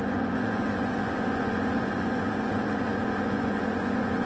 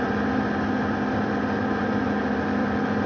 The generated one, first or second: first